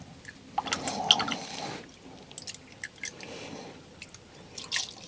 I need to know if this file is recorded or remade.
recorded